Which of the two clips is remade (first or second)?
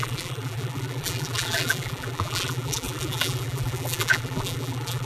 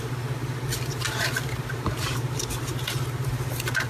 first